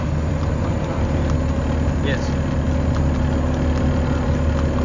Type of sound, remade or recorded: recorded